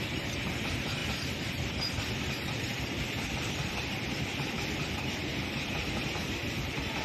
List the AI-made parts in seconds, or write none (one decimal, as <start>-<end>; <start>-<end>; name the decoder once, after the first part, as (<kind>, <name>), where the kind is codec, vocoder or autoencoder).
1.0-5.0 (vocoder, BigVGAN v2)